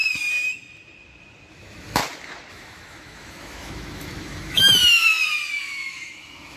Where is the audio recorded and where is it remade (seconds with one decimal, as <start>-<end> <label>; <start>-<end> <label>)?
0.0-1.5 recorded; 1.5-2.0 remade; 2.0-2.5 recorded; 2.5-4.8 remade; 4.8-5.6 recorded; 5.6-6.6 remade